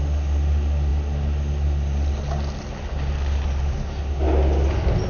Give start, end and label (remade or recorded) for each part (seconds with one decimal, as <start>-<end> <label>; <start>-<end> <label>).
0.0-5.1 recorded